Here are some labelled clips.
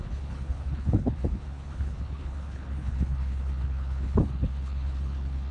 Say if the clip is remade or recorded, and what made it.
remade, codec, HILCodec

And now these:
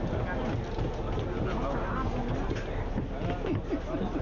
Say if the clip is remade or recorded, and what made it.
recorded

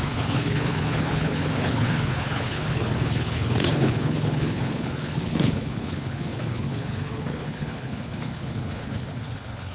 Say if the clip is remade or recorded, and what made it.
remade, codec, HILCodec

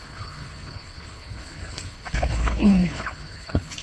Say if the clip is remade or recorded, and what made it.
remade, codec, HILCodec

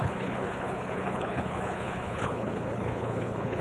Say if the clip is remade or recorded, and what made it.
remade, codec, HILCodec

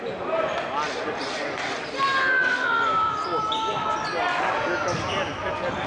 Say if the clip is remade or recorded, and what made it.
recorded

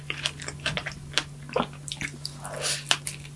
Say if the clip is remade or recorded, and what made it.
recorded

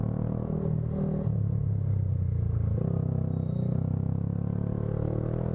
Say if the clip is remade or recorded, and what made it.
recorded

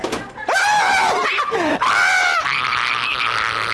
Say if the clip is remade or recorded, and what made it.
recorded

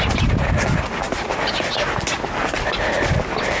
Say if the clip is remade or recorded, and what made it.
recorded